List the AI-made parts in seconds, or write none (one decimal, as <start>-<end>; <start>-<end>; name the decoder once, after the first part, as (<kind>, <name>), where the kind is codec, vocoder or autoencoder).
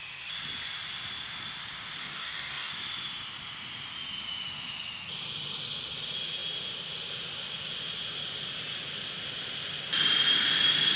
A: 2.0-2.7 (codec, DAC)